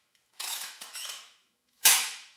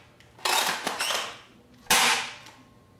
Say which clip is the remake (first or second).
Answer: first